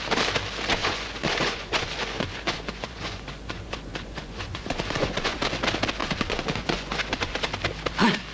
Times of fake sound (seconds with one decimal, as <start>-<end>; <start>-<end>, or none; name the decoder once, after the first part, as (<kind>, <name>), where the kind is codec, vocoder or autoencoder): 0.8-5.4 (vocoder, Vocos); 6.0-7.4